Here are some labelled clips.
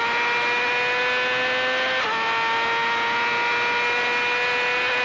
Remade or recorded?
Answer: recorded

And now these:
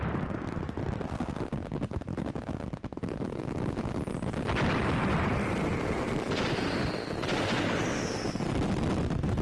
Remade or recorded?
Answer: recorded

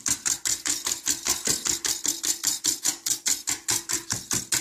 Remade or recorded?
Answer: recorded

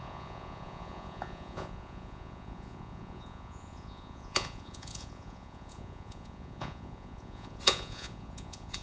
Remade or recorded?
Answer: remade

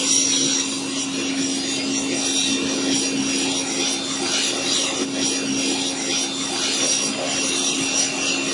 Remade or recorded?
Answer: recorded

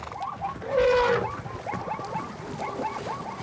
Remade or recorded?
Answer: recorded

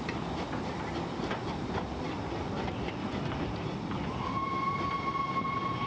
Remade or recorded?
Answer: recorded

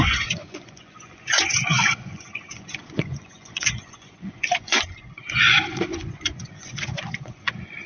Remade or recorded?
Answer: remade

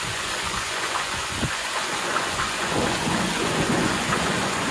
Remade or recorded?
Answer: remade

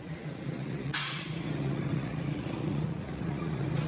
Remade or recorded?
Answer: remade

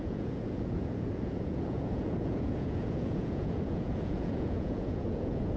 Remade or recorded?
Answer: remade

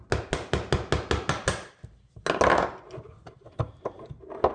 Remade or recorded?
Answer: recorded